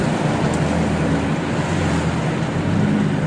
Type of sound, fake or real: real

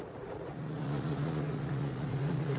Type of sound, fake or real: fake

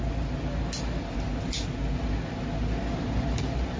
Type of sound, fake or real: real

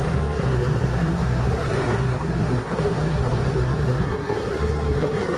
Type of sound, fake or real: fake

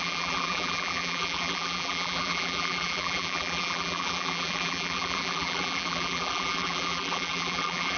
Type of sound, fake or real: fake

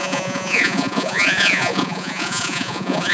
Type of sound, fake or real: fake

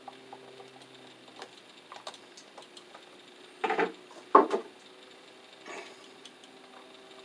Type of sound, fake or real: real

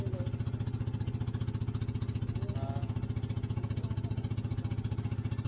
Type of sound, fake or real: real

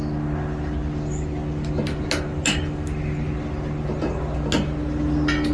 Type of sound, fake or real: real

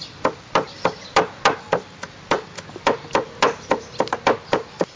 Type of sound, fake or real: real